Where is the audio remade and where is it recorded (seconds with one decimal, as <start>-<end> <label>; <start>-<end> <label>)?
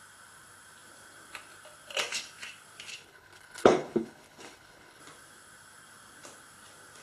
0.0-2.9 recorded; 2.9-5.0 remade; 5.0-7.0 recorded